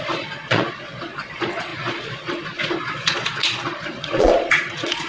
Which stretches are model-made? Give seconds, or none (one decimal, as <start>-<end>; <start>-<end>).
0.0-5.1